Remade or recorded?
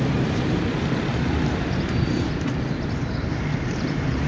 remade